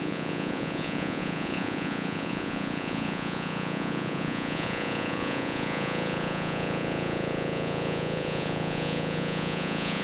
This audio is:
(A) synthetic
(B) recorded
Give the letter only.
A